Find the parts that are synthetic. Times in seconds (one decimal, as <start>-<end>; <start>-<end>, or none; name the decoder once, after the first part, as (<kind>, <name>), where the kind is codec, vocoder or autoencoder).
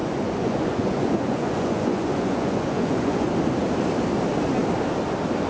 0.0-3.3 (vocoder, Vocos)